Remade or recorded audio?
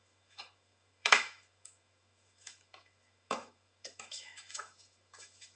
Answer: remade